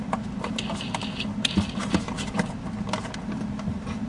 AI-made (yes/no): no